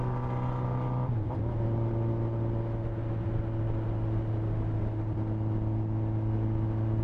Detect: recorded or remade recorded